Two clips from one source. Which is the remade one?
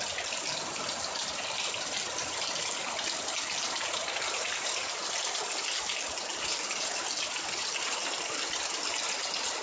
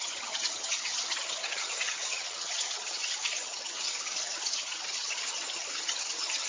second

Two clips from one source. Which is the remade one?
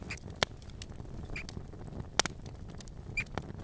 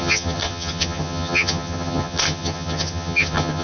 second